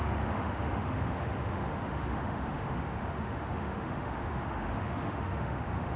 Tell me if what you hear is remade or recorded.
remade